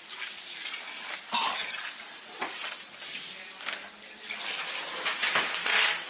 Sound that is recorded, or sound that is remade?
recorded